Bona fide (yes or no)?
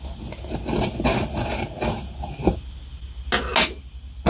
yes